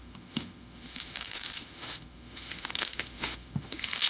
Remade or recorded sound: remade